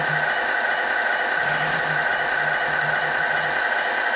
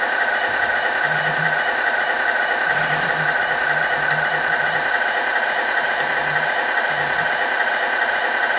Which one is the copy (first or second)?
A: second